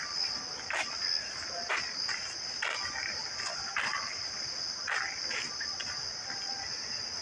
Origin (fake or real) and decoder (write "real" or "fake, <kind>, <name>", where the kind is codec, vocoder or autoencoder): real